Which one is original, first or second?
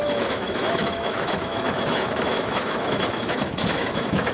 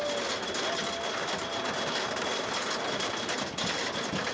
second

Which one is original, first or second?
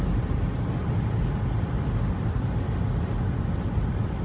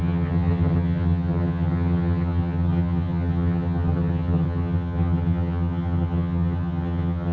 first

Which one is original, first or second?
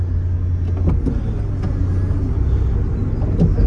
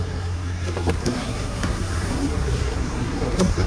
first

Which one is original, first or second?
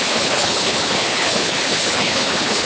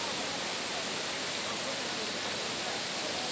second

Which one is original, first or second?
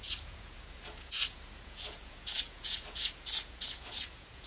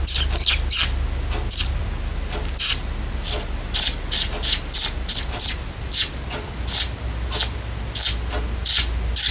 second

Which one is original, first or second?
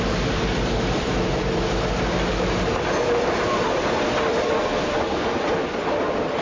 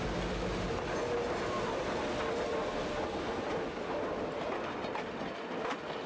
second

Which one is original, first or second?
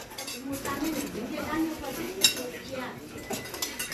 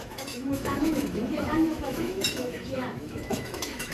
first